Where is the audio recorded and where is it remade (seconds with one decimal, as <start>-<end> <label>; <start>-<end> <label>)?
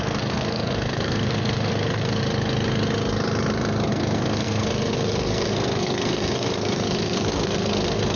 0.0-2.2 remade; 2.2-3.9 recorded; 3.9-8.2 remade